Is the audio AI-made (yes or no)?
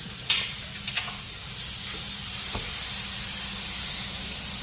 yes